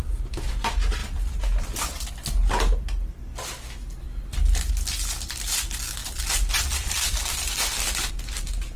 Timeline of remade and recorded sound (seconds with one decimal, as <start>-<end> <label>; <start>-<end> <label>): 0.0-1.0 recorded; 1.0-2.1 remade; 2.1-6.0 recorded; 6.0-8.1 remade; 8.1-8.8 recorded